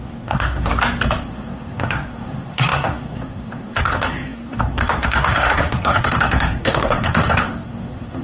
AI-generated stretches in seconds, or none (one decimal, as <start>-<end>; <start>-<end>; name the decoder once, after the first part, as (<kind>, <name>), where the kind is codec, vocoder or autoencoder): 0.0-0.7 (codec, SNAC); 1.2-8.2